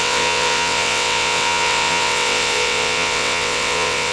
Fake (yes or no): yes